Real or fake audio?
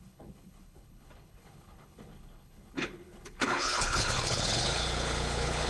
fake